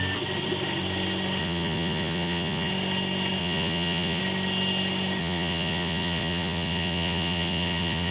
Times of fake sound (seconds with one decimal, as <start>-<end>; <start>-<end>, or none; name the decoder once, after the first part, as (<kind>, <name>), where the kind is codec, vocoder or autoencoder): 1.4-2.7 (vocoder, Vocos); 3.4-4.2; 5.2-8.1